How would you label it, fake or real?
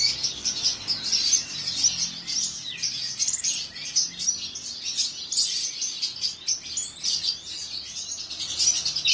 real